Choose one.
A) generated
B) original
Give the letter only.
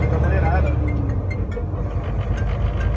B